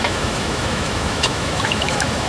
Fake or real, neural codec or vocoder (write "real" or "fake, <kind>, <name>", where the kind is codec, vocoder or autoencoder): fake, autoencoder, DAC-VAE